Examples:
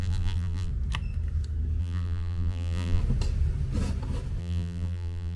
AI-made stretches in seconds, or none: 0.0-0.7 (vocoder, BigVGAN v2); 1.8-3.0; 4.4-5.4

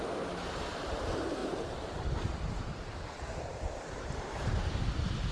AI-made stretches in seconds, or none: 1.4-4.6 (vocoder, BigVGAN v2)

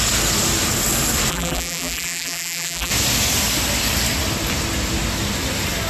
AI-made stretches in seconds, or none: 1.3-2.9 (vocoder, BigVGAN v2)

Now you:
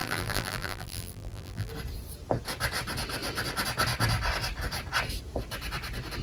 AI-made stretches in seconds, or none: 0.0-1.7 (vocoder, BigVGAN v2)